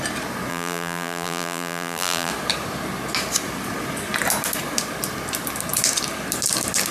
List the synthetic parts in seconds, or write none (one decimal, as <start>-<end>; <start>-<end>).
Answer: 0.5-2.3